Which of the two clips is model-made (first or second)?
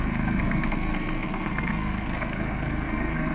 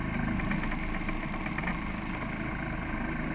first